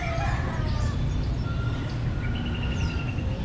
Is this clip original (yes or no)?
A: yes